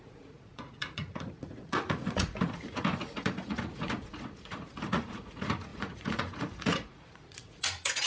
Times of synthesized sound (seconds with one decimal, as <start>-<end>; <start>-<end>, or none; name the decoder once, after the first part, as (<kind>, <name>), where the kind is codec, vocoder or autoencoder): 0.0-8.1 (vocoder, Vocos)